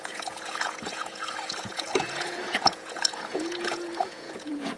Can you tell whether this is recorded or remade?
remade